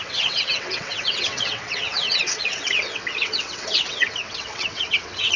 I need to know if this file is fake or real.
fake